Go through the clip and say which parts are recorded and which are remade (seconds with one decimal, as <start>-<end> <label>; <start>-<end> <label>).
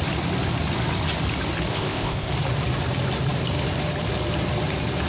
0.0-1.7 recorded; 1.7-2.3 remade; 2.3-5.1 recorded